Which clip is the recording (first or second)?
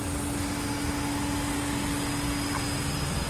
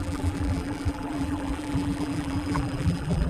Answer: first